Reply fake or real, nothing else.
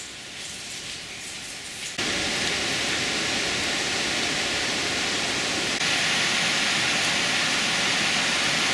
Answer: real